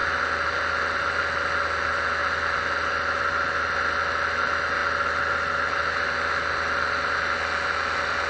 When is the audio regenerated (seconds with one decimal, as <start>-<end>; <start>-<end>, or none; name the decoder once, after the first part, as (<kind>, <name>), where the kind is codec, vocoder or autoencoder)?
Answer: none